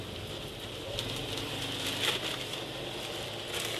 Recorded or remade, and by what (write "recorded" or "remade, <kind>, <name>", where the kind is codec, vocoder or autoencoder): recorded